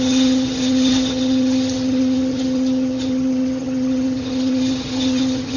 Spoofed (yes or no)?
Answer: yes